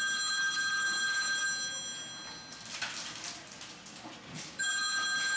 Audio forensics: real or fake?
real